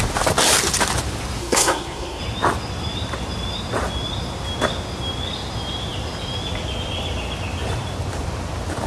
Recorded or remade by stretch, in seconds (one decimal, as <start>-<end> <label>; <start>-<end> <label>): 0.0-1.4 recorded; 1.4-2.2 remade; 2.2-8.9 recorded